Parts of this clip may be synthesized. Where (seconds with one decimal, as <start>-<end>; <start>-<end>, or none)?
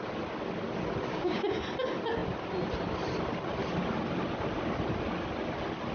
1.1-1.6